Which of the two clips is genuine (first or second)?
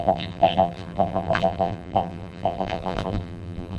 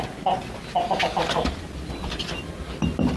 second